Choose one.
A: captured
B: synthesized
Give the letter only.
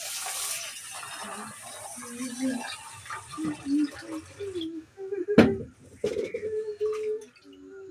A